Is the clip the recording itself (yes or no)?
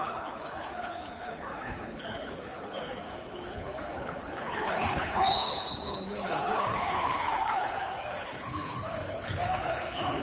no